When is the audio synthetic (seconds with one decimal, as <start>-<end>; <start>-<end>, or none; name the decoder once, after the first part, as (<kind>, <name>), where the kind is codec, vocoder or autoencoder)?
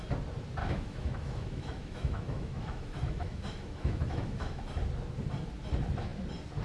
0.6-4.6 (autoencoder, DAC-VAE)